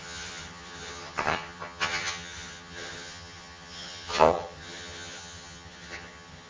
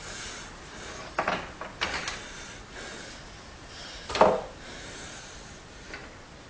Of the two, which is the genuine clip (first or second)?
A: second